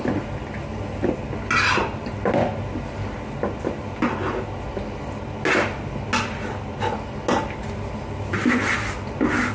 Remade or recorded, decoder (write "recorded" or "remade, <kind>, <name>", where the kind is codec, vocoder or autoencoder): recorded